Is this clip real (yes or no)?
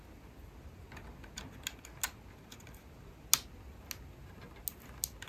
yes